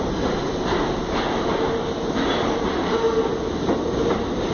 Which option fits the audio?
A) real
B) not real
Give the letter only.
A